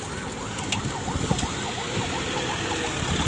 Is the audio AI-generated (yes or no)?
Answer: no